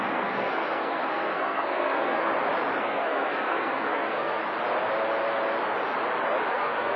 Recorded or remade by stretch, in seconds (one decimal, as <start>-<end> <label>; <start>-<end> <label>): 0.0-2.3 remade; 2.3-2.8 recorded; 2.8-4.4 remade; 4.4-6.5 recorded; 6.5-7.0 remade